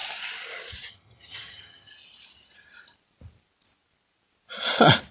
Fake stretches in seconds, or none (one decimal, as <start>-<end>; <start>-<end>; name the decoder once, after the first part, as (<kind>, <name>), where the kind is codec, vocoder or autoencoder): 0.9-1.9 (vocoder, HiFi-GAN)